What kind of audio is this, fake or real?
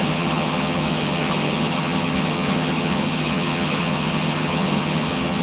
fake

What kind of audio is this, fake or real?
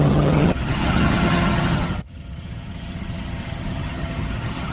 fake